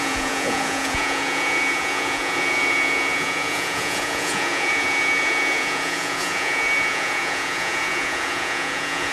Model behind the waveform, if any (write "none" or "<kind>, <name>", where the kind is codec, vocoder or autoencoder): vocoder, Vocos